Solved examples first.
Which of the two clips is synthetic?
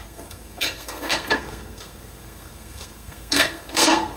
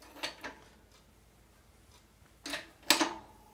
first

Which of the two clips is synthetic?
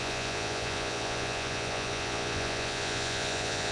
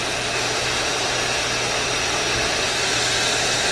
first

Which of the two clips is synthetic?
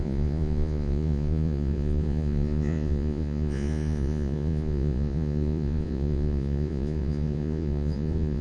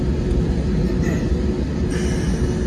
first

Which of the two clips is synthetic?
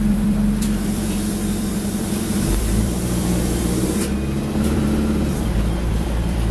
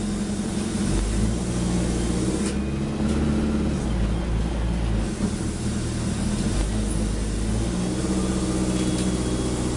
first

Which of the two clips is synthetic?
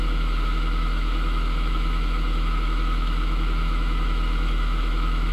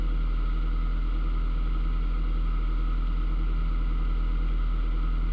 first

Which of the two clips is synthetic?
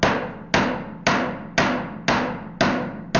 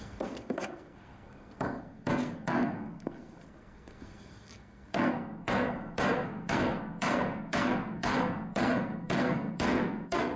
second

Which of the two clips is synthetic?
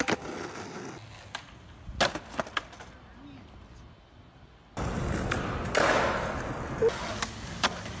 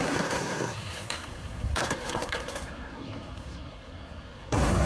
second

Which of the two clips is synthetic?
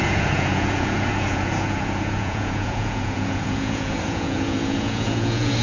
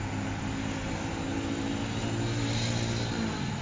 first